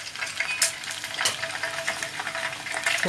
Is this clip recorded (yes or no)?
yes